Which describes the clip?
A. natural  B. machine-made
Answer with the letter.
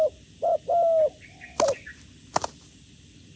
A